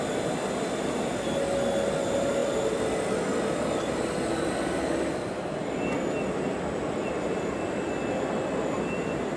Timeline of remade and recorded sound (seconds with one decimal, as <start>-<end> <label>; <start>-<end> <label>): 0.0-9.4 recorded